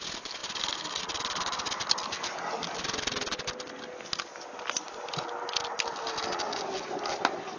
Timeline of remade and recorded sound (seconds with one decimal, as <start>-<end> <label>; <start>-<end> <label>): 0.0-7.6 recorded